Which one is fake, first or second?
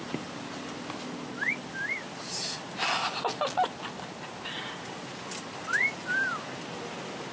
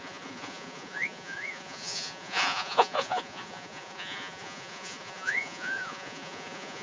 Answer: second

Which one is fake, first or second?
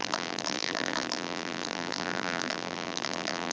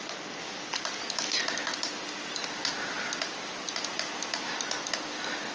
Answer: first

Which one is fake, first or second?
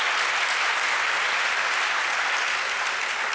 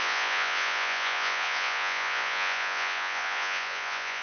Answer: second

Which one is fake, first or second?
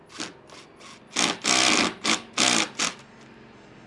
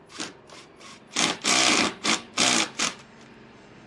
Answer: second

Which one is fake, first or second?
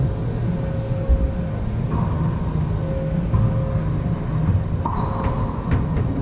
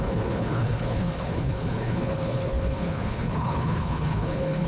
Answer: second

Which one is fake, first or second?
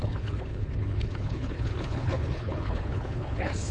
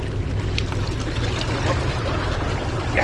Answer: first